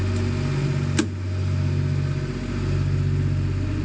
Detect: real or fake real